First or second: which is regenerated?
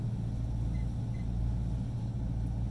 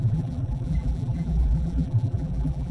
second